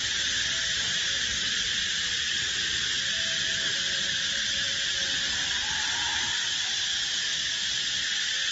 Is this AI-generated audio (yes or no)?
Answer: no